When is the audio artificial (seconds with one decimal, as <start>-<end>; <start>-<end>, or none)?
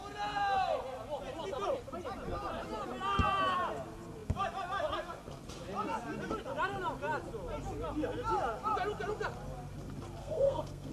10.2-10.9